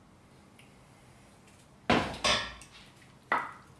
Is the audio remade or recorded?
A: recorded